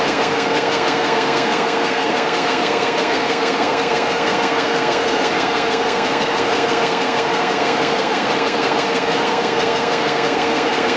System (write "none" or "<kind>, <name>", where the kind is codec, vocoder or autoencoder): codec, SNAC